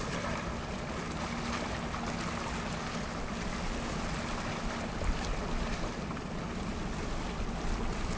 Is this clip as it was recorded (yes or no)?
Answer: yes